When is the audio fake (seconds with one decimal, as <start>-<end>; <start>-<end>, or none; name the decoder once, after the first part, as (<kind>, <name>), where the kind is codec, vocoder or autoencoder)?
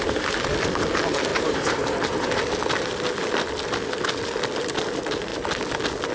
1.3-2.4 (vocoder, BigVGAN v2)